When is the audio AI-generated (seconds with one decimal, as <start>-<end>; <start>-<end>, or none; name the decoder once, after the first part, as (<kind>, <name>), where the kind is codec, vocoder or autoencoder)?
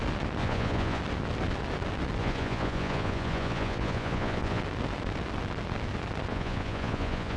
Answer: 0.4-1.0 (vocoder, Vocos); 2.2-4.6; 6.3-7.4